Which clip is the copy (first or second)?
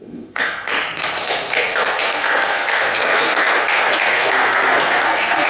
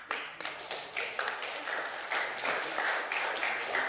first